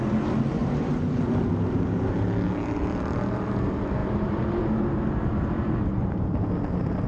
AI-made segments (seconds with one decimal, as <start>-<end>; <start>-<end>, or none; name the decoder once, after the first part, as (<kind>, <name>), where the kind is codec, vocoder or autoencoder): 0.6-1.2 (vocoder, BigVGAN v2); 4.0-6.4